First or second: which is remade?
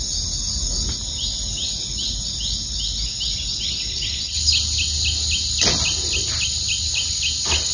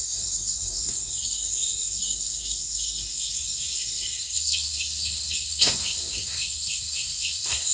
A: second